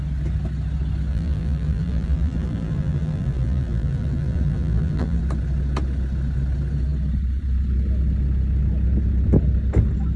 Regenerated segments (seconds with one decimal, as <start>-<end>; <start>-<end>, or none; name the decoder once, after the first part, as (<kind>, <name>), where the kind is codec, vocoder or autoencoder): 1.1-5.2 (vocoder, BigVGAN v2)